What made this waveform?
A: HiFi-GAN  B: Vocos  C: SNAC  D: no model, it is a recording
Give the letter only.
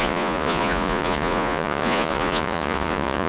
B